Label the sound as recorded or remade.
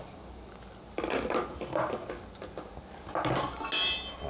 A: recorded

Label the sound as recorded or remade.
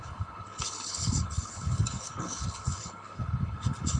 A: remade